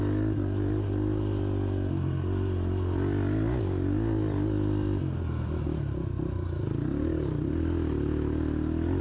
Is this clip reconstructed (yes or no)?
no